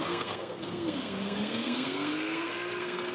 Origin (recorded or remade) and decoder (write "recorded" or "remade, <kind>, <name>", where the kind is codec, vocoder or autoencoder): remade, codec, SNAC